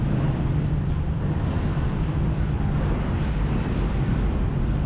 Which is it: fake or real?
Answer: fake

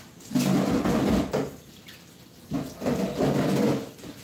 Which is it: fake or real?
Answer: real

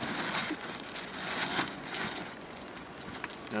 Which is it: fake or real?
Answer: fake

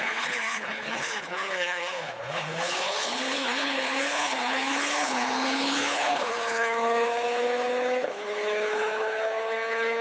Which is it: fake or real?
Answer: fake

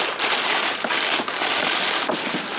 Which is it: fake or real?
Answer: real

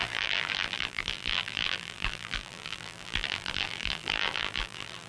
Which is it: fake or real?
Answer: fake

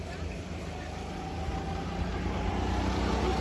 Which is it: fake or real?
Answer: real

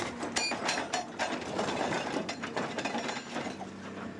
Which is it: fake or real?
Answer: real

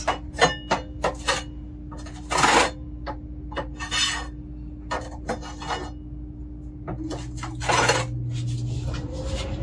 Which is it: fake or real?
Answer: real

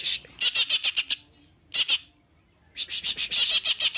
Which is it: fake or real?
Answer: real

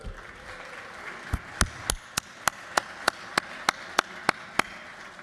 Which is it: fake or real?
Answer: real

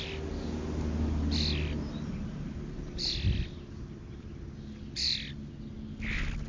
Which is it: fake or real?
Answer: real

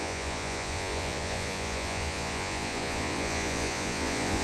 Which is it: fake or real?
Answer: fake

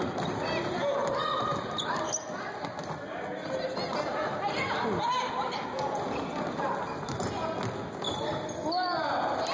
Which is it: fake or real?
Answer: real